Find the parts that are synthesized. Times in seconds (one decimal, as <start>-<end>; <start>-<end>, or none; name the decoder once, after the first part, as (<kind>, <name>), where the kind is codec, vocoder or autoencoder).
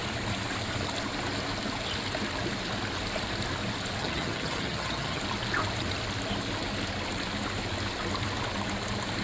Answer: 4.0-5.2 (vocoder, HiFi-GAN)